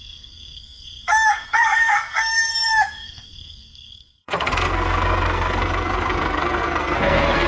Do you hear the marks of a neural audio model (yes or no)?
yes